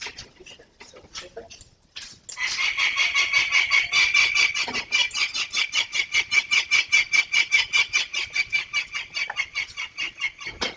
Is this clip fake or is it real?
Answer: real